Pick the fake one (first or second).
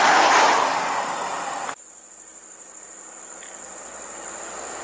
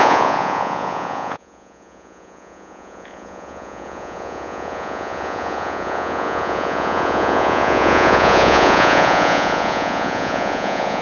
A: second